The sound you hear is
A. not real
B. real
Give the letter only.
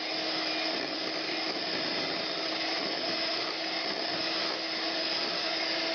B